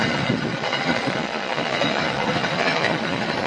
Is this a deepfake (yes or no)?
yes